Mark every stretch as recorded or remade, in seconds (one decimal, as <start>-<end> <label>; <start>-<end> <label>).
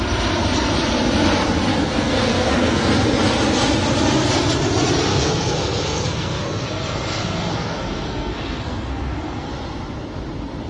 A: 0.0-1.7 recorded; 1.7-2.9 remade; 2.9-5.1 recorded; 5.1-9.5 remade; 9.5-10.7 recorded